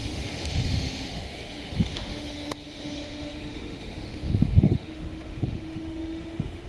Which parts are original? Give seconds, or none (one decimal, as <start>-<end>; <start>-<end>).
none